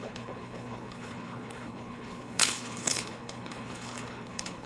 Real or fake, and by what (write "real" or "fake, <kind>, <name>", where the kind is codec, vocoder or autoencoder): fake, codec, HILCodec